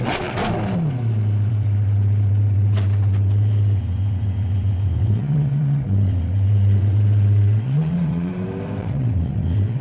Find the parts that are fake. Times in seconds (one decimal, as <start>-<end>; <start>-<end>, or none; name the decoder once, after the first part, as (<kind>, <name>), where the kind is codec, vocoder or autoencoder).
0.0-0.4 (vocoder, WaveNeXt); 1.5-8.3; 8.8-9.8